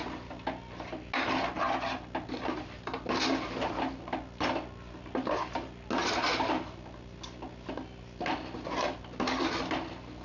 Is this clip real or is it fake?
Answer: real